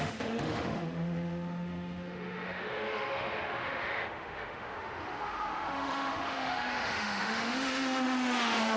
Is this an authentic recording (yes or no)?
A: no